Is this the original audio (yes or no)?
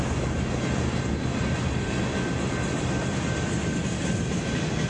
yes